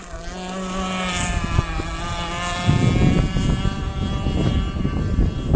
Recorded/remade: recorded